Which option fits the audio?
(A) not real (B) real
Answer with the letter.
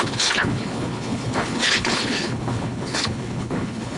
A